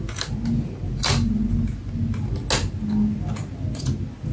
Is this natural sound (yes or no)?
yes